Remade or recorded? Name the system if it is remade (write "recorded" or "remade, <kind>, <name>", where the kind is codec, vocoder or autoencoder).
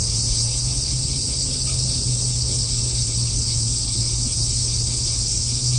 remade, codec, HILCodec